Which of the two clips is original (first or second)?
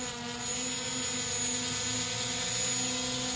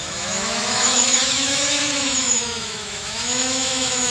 first